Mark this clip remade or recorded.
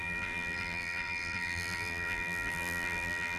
remade